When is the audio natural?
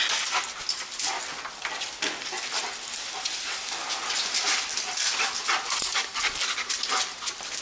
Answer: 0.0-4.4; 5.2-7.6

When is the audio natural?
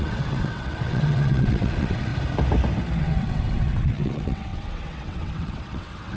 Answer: 2.1-3.0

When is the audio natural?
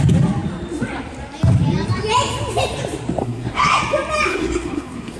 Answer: 0.0-3.2; 3.8-4.3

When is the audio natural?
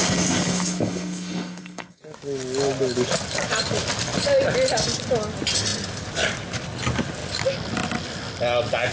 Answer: 2.0-8.9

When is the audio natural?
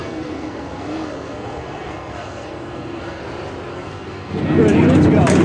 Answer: 3.2-3.7; 4.4-5.4